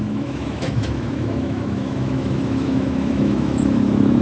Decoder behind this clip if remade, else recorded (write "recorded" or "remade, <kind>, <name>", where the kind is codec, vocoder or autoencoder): remade, autoencoder, DAC-VAE